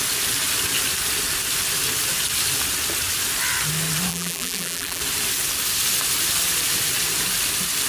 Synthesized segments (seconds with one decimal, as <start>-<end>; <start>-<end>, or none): 4.1-5.0